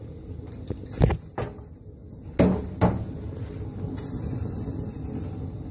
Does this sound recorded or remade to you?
recorded